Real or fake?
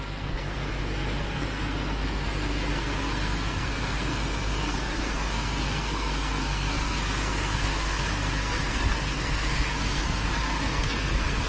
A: fake